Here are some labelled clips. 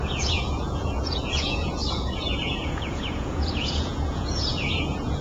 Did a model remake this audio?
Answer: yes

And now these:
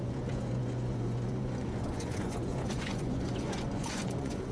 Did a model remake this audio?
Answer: yes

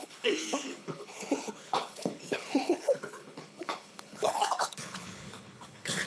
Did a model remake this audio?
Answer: yes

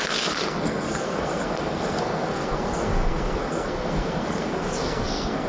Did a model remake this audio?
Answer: yes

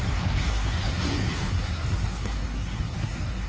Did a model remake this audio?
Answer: yes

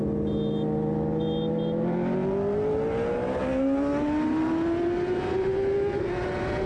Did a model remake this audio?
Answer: no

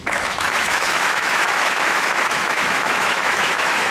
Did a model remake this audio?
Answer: yes